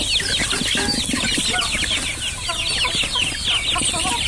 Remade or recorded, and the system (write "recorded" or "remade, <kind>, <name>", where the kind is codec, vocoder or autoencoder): recorded